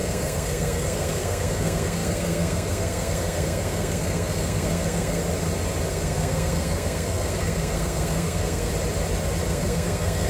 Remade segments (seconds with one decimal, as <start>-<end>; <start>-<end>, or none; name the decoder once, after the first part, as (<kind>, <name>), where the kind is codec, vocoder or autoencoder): 0.0-5.2 (codec, SNAC); 5.9-8.7; 9.5-10.3